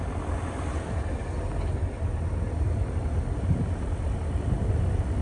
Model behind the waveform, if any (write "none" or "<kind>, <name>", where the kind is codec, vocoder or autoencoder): none